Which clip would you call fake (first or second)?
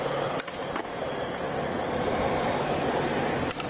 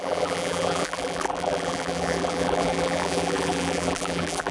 second